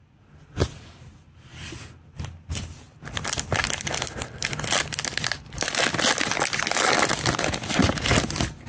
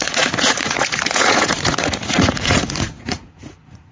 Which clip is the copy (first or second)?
second